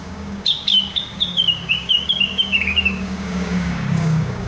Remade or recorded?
remade